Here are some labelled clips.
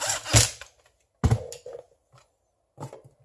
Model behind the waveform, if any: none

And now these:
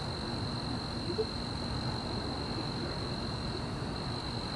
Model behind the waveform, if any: none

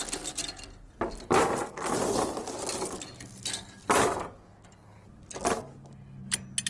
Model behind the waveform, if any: none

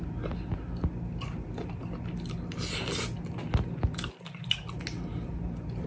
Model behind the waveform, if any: none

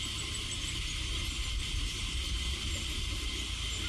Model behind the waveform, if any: none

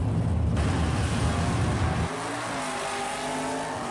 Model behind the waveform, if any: none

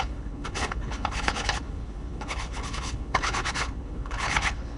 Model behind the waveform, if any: codec, HILCodec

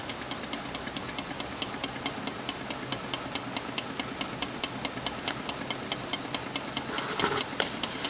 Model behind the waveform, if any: none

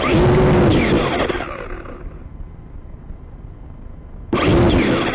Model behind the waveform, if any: none